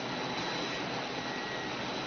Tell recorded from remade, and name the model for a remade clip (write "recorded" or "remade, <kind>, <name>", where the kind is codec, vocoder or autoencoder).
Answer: recorded